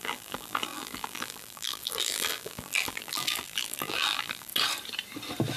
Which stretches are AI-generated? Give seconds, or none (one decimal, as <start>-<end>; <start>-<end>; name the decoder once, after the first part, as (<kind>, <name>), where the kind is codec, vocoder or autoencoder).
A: 0.0-4.5 (vocoder, BigVGAN v2)